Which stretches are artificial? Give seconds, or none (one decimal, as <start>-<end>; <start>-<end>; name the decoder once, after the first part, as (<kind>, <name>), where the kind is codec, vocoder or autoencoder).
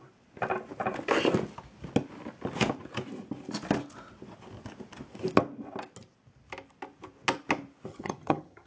7.9-8.7 (vocoder, HiFi-GAN)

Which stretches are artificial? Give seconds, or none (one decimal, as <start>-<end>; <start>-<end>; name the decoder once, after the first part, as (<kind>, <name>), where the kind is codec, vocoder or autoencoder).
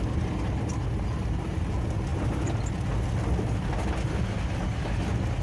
none